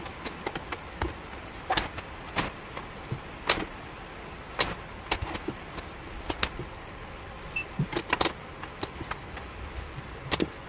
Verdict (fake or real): real